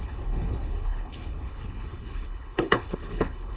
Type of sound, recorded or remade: remade